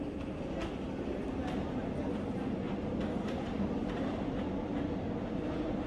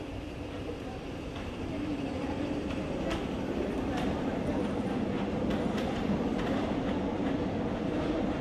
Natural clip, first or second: first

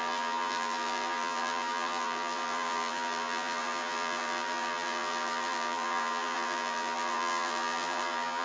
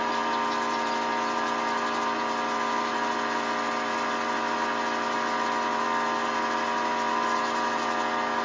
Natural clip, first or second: second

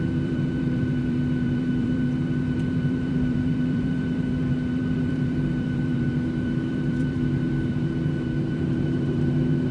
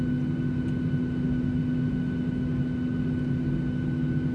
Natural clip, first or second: second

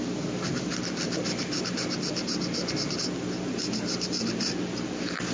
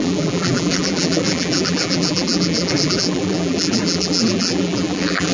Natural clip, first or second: first